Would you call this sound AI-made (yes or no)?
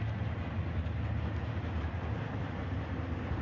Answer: no